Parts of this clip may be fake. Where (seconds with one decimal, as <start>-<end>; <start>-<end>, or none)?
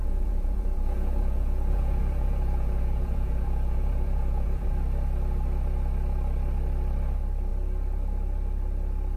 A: 0.0-4.7